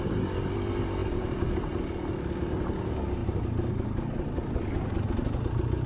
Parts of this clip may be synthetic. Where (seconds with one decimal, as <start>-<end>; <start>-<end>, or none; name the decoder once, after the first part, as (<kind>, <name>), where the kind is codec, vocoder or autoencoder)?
none